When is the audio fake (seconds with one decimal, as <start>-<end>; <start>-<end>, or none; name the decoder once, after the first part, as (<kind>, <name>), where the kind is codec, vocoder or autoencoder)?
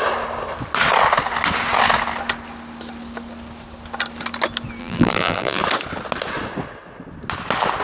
4.8-5.6 (vocoder, BigVGAN v2)